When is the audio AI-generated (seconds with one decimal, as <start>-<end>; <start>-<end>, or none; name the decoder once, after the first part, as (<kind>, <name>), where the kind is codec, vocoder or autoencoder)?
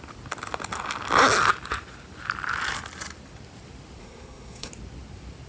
4.0-4.7 (codec, SNAC)